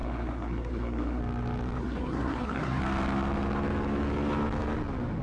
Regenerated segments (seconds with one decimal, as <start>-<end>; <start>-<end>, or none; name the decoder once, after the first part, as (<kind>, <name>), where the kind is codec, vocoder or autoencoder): 0.0-1.2 (codec, SNAC); 1.8-2.8